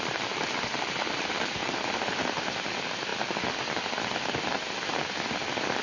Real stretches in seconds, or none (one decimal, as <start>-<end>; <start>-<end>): 0.0-1.6; 2.5-5.8